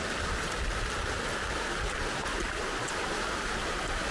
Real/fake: real